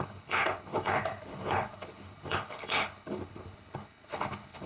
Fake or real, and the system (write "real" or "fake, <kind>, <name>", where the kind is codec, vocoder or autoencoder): fake, codec, HILCodec